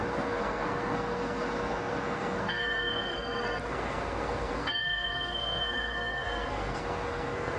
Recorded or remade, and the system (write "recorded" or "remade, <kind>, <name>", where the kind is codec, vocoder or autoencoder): remade, codec, SNAC